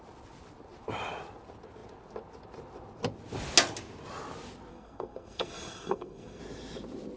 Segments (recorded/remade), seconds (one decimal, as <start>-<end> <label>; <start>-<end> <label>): 0.0-4.7 recorded; 4.7-6.4 remade; 6.4-7.2 recorded